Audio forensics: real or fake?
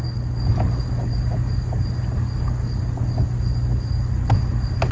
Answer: real